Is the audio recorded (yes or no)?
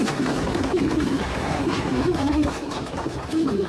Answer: no